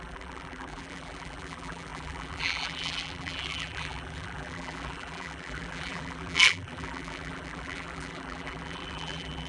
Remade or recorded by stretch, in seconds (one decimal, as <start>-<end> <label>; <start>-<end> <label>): 0.0-9.5 remade